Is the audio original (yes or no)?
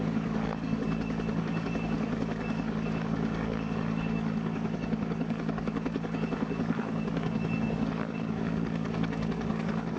no